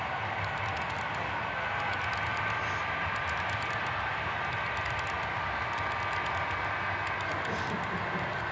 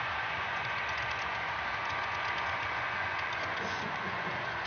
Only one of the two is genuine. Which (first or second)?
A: first